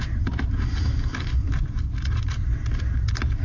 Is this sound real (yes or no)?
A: yes